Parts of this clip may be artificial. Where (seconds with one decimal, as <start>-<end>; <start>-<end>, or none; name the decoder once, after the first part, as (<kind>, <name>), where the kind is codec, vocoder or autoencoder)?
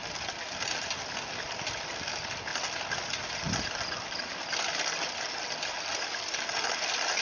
none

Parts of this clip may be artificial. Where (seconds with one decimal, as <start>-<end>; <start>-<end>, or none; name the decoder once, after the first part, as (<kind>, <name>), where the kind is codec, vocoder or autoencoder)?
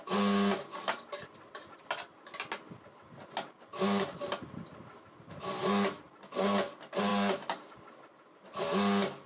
none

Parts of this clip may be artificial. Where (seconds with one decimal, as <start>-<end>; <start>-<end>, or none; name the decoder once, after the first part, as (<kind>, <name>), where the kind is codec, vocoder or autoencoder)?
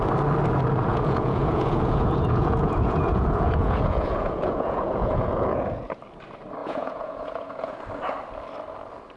0.9-6.0 (vocoder, Vocos); 6.6-7.8